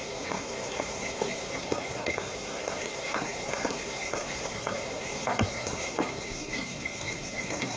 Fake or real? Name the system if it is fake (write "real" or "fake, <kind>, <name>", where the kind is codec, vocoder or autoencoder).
fake, codec, SNAC